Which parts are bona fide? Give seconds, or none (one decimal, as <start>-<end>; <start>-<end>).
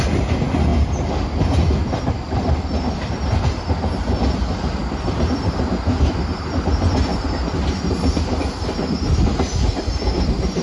0.0-4.8; 5.5-10.6